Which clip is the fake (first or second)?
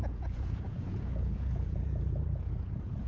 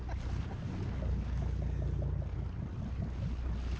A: first